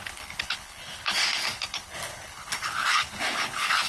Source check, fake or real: fake